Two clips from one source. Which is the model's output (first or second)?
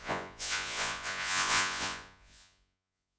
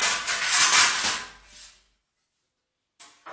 first